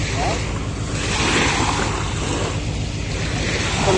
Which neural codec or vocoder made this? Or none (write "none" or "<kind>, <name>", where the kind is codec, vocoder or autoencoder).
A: none